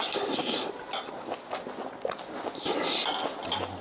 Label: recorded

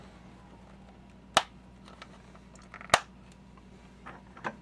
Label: recorded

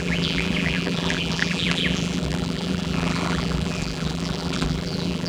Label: remade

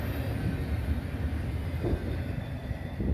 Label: recorded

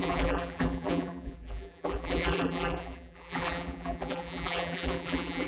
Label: remade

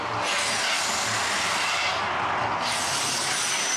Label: recorded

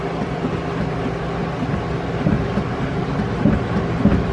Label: recorded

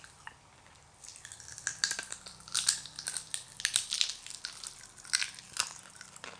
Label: recorded